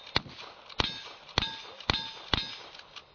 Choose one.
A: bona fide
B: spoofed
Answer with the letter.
A